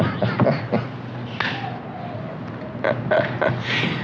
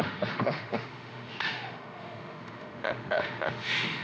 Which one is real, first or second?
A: first